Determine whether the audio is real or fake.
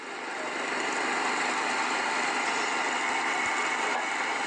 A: fake